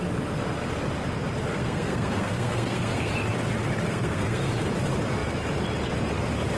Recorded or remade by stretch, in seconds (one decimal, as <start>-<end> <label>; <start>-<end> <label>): 0.0-1.5 recorded; 1.5-3.1 remade; 3.1-3.9 recorded; 3.9-4.5 remade; 4.5-6.6 recorded